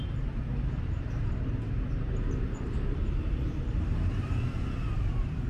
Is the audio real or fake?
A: fake